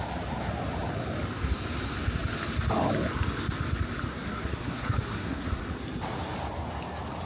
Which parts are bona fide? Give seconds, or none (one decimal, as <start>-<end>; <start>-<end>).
0.0-4.1; 5.6-7.2